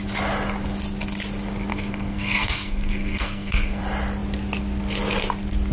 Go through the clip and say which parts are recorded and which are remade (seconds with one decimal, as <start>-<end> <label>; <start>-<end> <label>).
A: 0.0-1.7 recorded; 1.7-3.8 remade; 3.8-5.7 recorded